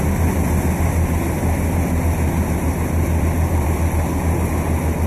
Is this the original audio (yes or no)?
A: yes